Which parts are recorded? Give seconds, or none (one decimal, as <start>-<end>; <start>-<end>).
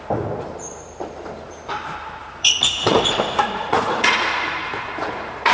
0.0-2.2